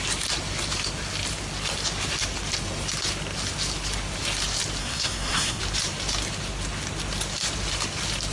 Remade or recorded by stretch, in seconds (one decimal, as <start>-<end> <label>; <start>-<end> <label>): 0.0-4.8 recorded; 4.8-5.6 remade; 5.6-8.3 recorded